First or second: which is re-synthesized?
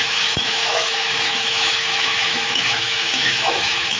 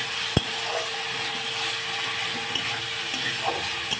first